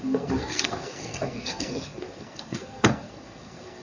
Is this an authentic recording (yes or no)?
no